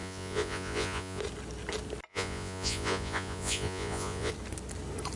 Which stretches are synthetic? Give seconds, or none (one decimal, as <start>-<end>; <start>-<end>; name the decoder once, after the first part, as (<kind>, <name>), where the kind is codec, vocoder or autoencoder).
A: 0.0-1.2 (vocoder, Vocos); 2.1-4.3